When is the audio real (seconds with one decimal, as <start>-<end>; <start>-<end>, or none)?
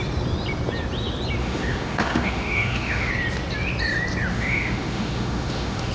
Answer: 0.0-1.4; 3.1-4.3